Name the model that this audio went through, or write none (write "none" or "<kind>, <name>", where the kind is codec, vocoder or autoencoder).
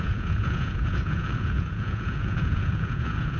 vocoder, Vocos